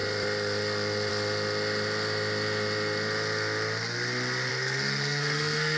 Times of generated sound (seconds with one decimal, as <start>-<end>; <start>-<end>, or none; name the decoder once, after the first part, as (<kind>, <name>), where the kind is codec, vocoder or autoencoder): 4.5-5.8 (codec, SNAC)